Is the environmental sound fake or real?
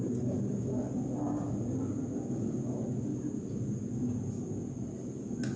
real